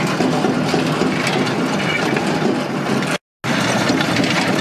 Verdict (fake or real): real